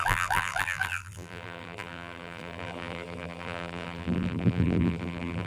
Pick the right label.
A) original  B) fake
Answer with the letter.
B